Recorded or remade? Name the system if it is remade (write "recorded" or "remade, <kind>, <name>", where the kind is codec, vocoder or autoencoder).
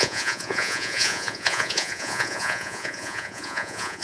remade, vocoder, Vocos